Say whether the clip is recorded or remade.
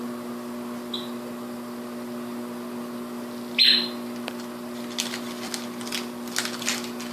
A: recorded